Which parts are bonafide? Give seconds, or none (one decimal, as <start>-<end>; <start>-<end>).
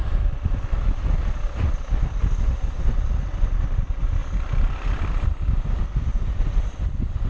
0.0-4.2; 5.1-6.1